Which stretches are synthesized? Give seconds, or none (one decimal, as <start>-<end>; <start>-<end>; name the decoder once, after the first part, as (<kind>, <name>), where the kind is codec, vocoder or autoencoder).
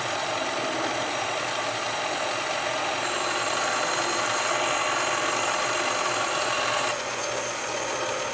6.9-7.9 (vocoder, Vocos)